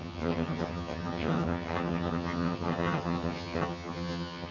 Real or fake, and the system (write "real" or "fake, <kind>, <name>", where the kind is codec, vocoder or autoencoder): fake, vocoder, HiFi-GAN